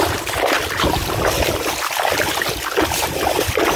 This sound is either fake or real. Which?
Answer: real